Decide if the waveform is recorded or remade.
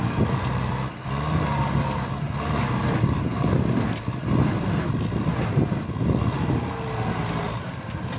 recorded